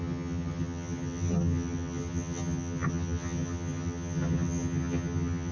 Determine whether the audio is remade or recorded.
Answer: remade